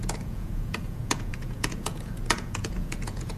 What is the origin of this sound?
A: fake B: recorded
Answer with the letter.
A